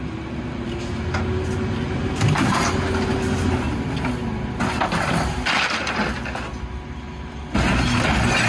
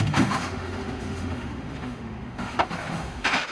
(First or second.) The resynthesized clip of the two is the second